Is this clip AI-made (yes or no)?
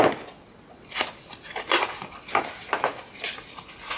no